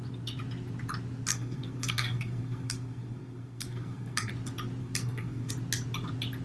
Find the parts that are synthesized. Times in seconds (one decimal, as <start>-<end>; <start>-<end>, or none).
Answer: 1.3-4.3; 4.8-5.5